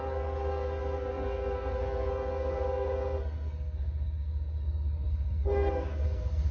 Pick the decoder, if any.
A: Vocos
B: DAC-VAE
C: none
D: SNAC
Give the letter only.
D